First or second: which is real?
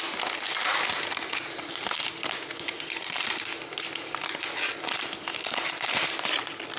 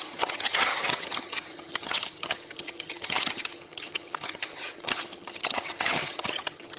first